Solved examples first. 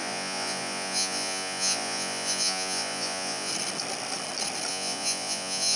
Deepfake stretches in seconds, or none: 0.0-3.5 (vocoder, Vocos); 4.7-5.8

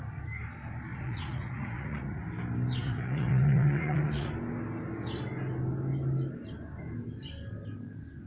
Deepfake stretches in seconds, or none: 0.9-2.2 (vocoder, Vocos); 2.8-4.3

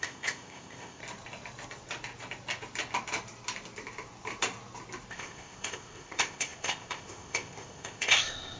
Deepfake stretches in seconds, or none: 0.0-1.0 (codec, ZipCodec); 5.1-8.6

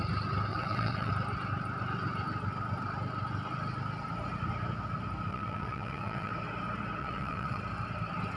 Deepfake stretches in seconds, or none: 0.5-1.1 (vocoder, WaveNeXt); 5.3-6.3; 7.0-7.6

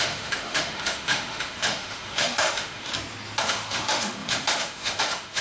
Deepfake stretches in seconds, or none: 0.0-2.9 (autoencoder, DAC-VAE); 3.4-5.4

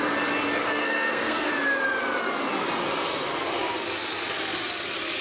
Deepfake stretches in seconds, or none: 0.7-1.5 (codec, SNAC)

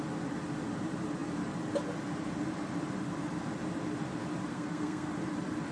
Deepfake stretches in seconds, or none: 4.5-5.1 (codec, SNAC)

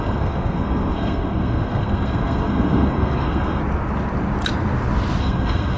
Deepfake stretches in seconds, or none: 0.0-3.6 (codec, SNAC); 5.2-5.8